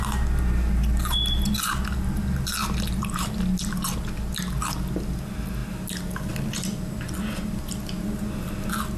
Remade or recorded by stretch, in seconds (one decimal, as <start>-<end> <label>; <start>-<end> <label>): 0.0-9.0 recorded